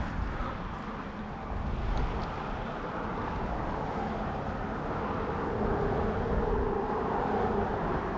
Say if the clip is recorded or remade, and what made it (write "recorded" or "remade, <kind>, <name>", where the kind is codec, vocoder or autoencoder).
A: recorded